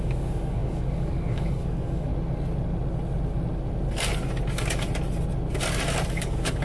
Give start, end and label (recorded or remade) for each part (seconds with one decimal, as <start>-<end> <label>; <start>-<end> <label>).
0.0-2.1 remade; 2.1-6.1 recorded; 6.1-6.6 remade